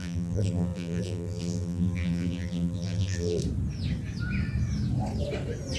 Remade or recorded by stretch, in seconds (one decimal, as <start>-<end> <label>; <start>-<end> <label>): 0.0-3.4 remade; 3.4-5.8 recorded